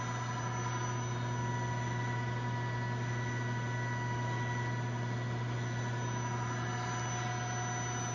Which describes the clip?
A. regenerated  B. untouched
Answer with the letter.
B